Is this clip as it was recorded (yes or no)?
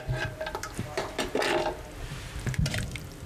yes